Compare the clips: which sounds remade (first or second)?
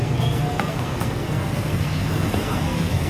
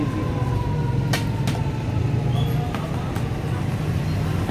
first